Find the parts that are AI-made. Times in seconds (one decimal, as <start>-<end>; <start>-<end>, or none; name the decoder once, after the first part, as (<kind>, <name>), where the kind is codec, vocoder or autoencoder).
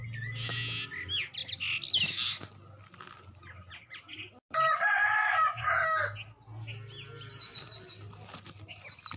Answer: none